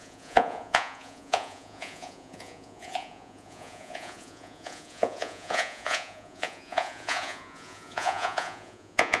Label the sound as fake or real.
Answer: fake